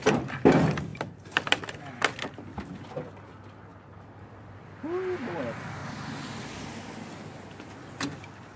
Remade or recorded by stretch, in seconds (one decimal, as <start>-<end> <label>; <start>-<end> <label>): 0.0-0.9 recorded; 0.9-2.0 remade; 2.0-5.8 recorded; 5.8-6.7 remade; 6.7-8.6 recorded